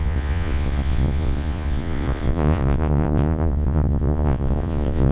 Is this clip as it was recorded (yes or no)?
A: no